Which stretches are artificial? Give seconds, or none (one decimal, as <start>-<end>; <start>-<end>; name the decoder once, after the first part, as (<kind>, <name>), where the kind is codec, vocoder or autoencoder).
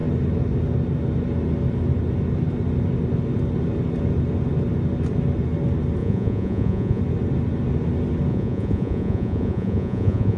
6.0-7.0 (vocoder, Vocos); 8.3-10.4